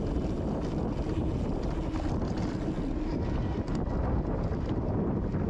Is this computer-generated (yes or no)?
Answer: no